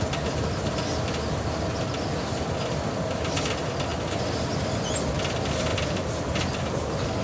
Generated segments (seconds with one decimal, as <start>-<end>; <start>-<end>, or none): none